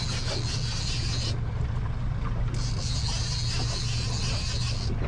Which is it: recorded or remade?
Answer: recorded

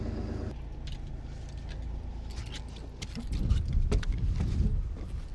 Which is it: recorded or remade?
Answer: recorded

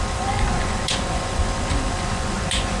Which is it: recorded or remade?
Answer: remade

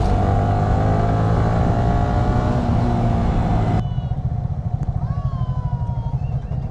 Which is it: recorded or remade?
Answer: recorded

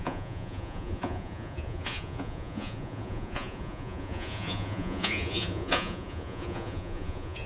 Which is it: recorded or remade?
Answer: remade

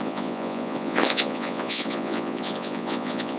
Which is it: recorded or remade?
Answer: remade